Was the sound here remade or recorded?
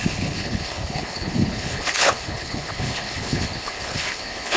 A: remade